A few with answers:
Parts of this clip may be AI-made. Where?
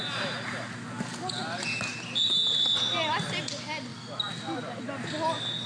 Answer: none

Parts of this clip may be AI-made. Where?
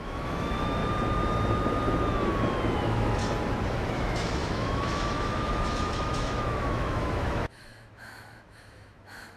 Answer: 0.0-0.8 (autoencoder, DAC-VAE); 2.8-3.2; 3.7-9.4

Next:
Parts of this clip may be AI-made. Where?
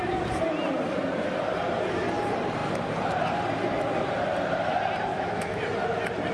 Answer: 5.1-5.6 (autoencoder, DAC-VAE)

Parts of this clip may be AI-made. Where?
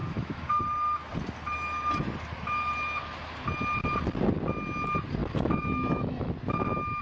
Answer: 0.0-0.6 (autoencoder, DAC-VAE); 5.2-6.3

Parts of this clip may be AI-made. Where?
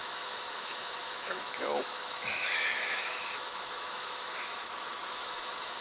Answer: 0.0-5.8 (autoencoder, DAC-VAE)